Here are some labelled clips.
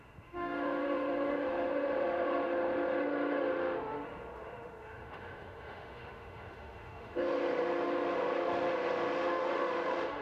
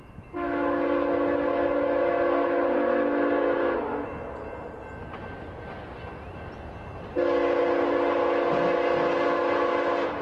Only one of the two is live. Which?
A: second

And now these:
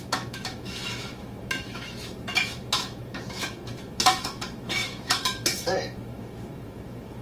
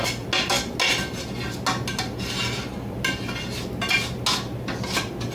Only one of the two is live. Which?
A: second